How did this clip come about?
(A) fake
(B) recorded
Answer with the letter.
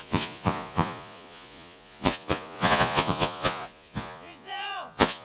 A